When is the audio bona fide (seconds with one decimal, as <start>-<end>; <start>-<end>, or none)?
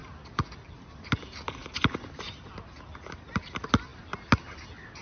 0.0-5.0